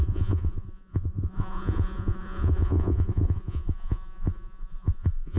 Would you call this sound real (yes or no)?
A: no